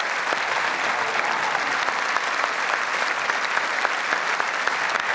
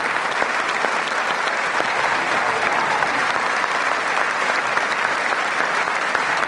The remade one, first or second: second